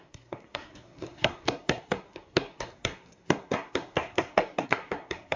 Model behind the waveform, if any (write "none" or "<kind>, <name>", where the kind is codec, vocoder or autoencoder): codec, SNAC